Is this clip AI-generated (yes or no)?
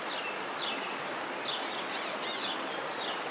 no